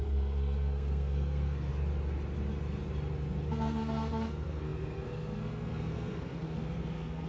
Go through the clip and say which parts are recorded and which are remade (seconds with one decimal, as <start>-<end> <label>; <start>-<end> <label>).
0.0-1.7 remade; 1.7-3.5 recorded; 3.5-7.3 remade